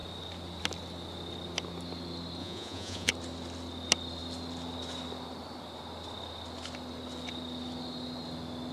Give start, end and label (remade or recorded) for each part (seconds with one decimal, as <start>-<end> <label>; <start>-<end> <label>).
0.0-2.4 recorded; 2.4-3.1 remade; 3.1-8.7 recorded